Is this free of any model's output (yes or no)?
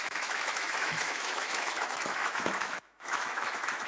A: no